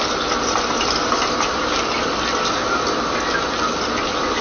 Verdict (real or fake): real